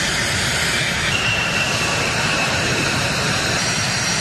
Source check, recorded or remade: remade